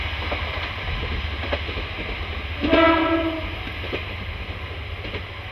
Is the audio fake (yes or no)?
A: no